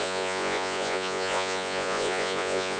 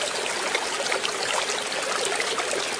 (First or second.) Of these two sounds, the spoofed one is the first